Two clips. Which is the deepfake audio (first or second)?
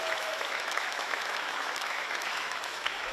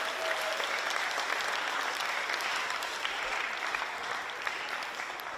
first